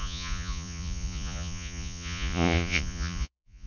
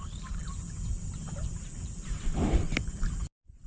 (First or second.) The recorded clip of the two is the second